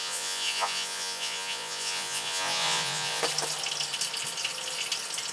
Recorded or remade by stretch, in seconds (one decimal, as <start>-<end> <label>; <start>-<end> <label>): 0.0-3.2 remade; 3.2-5.3 recorded